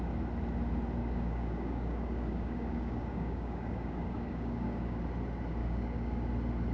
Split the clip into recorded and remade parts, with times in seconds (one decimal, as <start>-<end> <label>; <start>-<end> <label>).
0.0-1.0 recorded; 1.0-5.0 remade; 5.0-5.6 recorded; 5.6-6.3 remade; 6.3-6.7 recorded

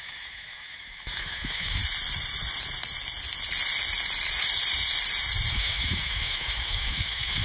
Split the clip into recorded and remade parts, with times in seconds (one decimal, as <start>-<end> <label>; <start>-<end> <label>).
0.0-1.8 remade; 1.8-5.5 recorded; 5.5-7.4 remade

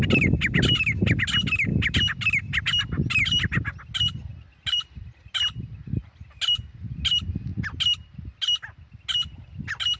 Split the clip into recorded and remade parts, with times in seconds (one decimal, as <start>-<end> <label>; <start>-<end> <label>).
0.0-10.0 recorded